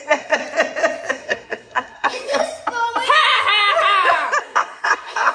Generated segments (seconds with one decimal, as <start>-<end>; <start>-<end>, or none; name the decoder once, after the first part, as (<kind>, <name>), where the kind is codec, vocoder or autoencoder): 0.0-0.4 (codec, SNAC); 1.1-2.4; 4.4-5.3